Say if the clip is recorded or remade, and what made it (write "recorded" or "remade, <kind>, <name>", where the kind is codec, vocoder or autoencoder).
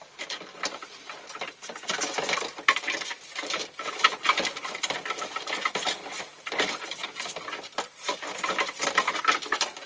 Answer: recorded